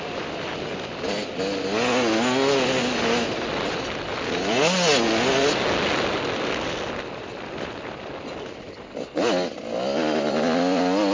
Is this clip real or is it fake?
real